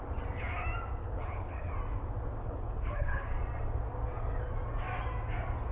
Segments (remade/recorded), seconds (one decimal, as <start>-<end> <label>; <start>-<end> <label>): 0.0-1.0 recorded; 1.0-1.7 remade; 1.7-2.4 recorded; 2.4-3.3 remade; 3.3-5.7 recorded